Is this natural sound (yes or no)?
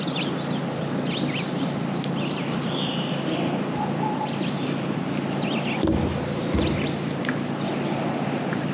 yes